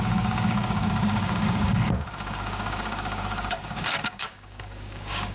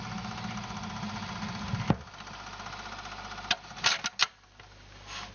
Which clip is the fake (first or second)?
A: first